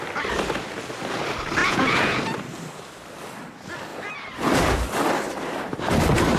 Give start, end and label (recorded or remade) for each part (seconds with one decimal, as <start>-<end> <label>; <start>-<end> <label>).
0.0-1.6 recorded; 1.6-2.2 remade; 2.2-6.4 recorded